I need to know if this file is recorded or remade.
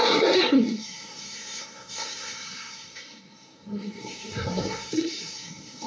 remade